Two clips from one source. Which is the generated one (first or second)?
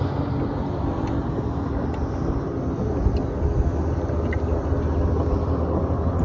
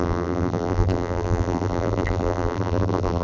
second